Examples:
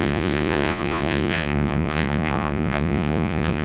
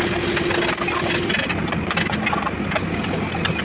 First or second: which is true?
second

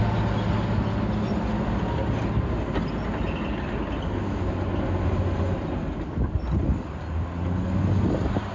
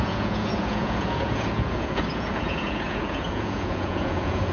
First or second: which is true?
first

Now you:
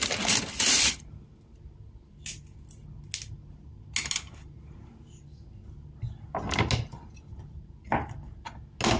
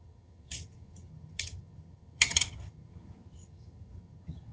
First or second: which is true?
first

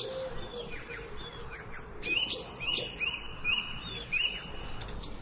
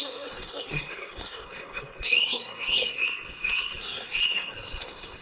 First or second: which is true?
first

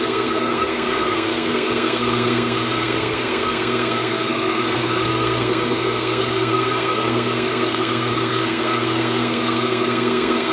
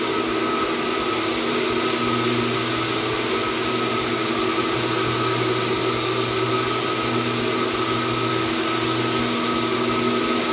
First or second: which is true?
second